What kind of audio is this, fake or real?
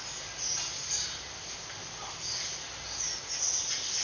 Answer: real